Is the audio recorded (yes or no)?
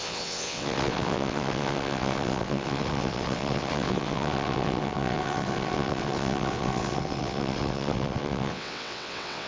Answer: no